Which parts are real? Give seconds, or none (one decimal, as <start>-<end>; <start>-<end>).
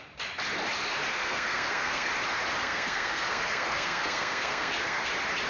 0.0-1.1; 2.1-2.6; 5.1-5.5